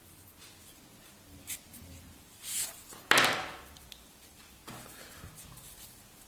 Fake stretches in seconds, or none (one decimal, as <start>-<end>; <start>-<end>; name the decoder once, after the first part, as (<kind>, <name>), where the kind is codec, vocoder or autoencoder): 1.7-2.9 (vocoder, BigVGAN v2)